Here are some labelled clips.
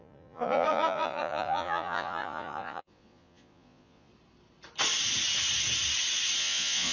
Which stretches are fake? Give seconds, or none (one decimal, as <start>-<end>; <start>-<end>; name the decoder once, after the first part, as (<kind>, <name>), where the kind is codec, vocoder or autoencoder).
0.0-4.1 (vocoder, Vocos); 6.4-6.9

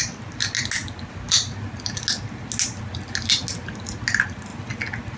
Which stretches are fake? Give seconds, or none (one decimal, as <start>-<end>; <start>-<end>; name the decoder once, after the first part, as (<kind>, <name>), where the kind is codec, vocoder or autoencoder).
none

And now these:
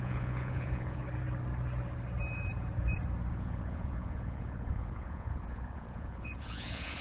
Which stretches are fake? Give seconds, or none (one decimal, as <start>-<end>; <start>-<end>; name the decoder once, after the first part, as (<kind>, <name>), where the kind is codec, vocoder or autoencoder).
0.0-1.0 (vocoder, Vocos); 3.3-7.0

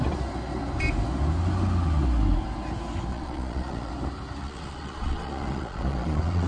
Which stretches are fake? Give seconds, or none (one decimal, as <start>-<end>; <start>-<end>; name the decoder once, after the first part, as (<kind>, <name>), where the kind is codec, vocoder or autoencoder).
3.1-3.9 (vocoder, Vocos); 4.4-6.5

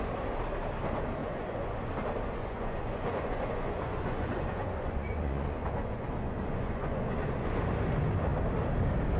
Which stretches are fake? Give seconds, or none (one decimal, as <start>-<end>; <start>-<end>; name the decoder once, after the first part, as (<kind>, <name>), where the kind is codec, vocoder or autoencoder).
1.2-1.9 (vocoder, Vocos); 2.4-7.6

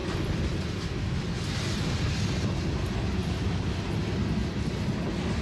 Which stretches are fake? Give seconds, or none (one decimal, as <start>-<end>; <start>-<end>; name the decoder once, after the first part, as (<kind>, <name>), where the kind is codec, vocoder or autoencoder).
none

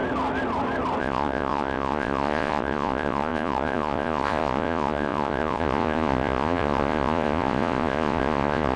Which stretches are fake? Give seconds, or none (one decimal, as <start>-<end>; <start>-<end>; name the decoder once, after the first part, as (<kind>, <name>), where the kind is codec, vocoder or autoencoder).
1.0-8.8 (vocoder, Vocos)